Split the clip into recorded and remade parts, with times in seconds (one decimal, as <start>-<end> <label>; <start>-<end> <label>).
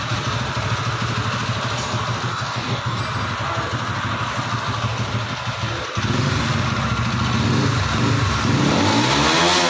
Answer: 0.0-2.3 recorded; 2.3-3.0 remade; 3.0-9.7 recorded